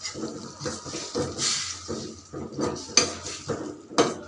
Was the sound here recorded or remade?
recorded